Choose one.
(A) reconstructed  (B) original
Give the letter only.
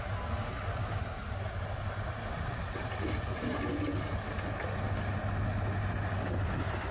B